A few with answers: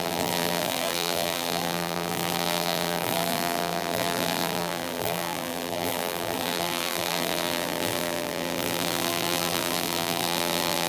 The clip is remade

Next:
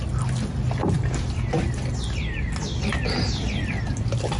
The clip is recorded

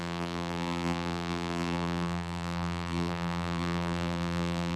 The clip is remade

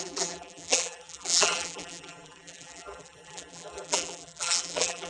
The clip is remade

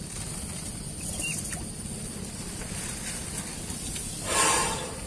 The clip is recorded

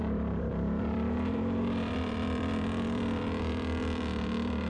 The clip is remade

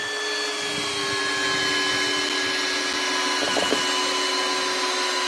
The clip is recorded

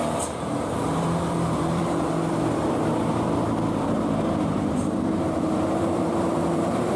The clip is remade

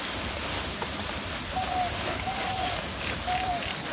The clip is recorded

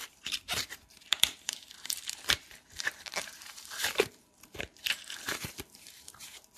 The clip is remade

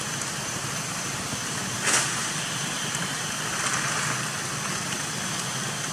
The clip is recorded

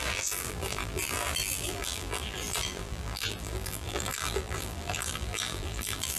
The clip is remade